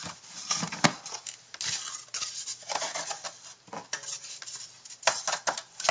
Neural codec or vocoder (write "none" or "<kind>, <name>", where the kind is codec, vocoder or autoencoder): none